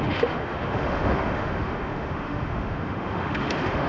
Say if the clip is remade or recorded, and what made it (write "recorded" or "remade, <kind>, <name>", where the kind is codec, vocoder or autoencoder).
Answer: remade, autoencoder, DAC-VAE